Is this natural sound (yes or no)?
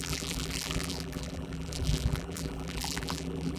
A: no